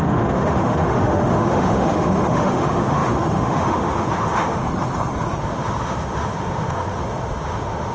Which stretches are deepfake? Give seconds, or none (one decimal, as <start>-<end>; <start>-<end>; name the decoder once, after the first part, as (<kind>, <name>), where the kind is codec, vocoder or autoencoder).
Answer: 0.0-4.6 (autoencoder, DAC-VAE); 5.4-7.9